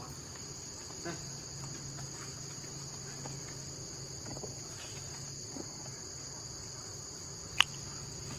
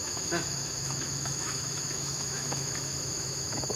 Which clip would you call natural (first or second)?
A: first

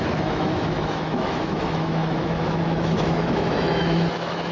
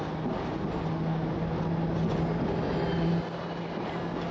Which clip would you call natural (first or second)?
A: second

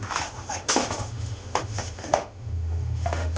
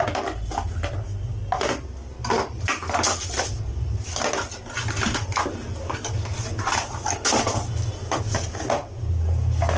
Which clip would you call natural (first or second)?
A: second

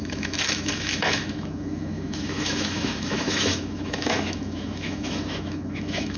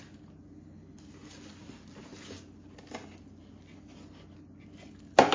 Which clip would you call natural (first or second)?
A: second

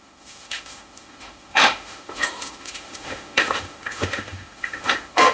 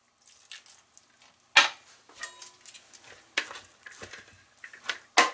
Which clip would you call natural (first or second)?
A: second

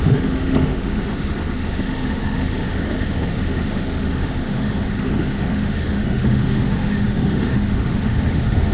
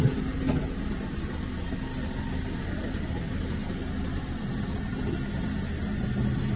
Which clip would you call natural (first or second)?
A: second